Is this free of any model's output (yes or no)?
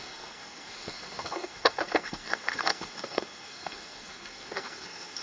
no